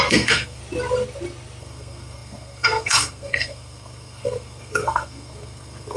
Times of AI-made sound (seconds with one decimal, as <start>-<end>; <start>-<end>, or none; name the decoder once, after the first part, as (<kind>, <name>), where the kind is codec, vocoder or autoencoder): 0.0-0.6 (codec, SNAC); 1.6-6.0